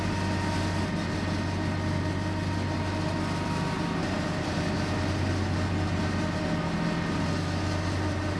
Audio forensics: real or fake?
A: real